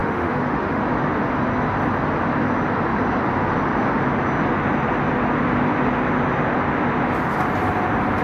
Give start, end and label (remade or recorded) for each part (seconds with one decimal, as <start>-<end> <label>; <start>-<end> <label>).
0.0-0.8 remade; 0.8-8.2 recorded